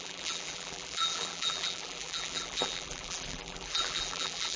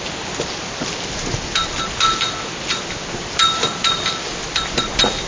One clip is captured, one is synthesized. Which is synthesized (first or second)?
first